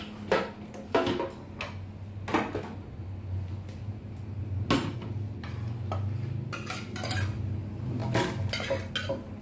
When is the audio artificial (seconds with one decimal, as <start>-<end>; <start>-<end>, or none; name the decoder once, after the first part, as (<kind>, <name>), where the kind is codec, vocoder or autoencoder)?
none